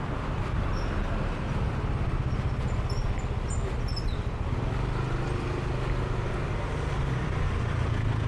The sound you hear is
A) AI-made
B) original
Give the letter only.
B